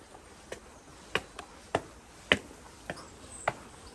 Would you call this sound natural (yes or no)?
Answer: yes